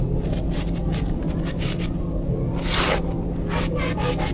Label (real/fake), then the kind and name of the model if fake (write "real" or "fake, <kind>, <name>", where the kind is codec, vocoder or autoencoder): real